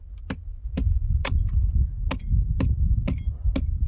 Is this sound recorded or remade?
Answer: recorded